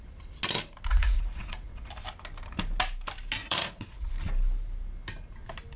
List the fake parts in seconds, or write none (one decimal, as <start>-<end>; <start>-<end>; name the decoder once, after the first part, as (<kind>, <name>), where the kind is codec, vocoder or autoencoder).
0.9-1.9 (vocoder, Vocos); 3.4-4.1